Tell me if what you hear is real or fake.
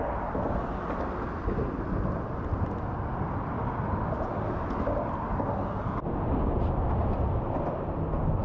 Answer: real